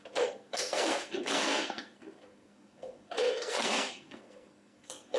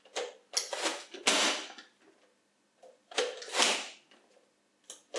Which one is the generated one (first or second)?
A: first